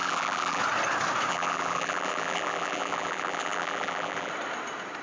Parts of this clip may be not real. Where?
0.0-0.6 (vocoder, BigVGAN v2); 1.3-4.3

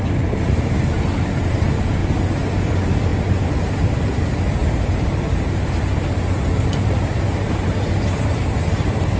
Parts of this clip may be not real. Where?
0.0-2.0 (vocoder, BigVGAN v2); 2.5-3.1; 3.6-9.2

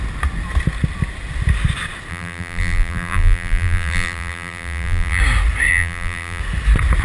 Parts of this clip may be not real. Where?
2.1-5.2 (vocoder, BigVGAN v2); 5.7-6.4

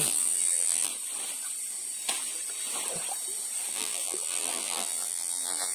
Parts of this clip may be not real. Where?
0.0-0.9 (vocoder, BigVGAN v2); 3.7-5.7

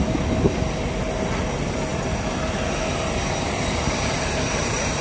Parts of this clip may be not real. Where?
none

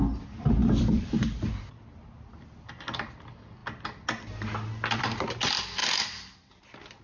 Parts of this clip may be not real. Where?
0.6-1.5 (vocoder, BigVGAN v2); 5.8-7.0